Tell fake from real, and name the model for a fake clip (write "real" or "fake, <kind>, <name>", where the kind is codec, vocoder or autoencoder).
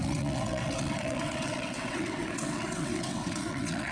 fake, vocoder, WaveNeXt